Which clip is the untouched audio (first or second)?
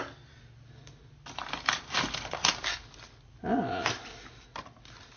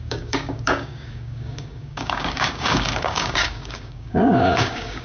first